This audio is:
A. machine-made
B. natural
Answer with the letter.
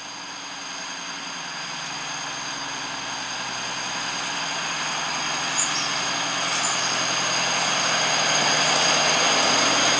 B